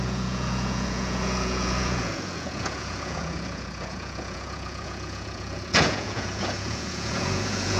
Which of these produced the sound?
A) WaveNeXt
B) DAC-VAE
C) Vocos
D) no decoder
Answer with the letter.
C